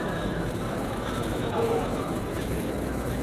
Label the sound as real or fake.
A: fake